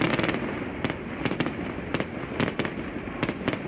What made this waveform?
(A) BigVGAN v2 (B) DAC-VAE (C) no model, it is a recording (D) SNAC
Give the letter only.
C